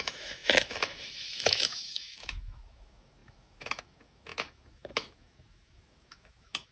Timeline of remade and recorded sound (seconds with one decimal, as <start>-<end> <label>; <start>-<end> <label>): 0.0-6.7 remade